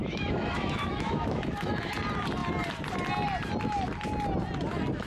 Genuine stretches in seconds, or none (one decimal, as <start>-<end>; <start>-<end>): 1.9-5.1